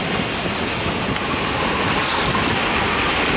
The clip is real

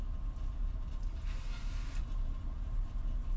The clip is real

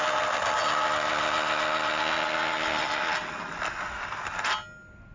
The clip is real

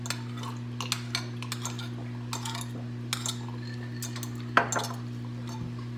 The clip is real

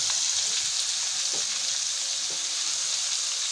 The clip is real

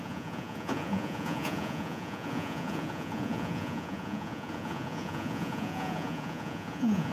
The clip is fake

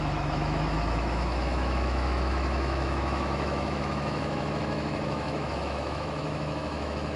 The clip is fake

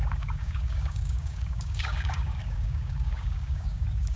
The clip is fake